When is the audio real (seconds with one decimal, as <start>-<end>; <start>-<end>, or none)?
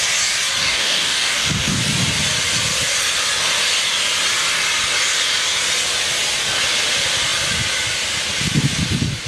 0.0-0.6; 1.8-9.3